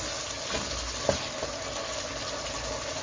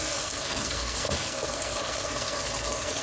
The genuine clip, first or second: first